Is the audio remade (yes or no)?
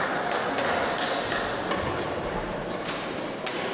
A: no